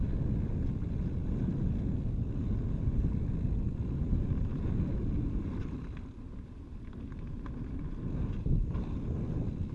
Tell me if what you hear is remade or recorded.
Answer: recorded